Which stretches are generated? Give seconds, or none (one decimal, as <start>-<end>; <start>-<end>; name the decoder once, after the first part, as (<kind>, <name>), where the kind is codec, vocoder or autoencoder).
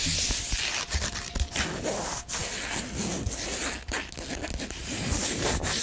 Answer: none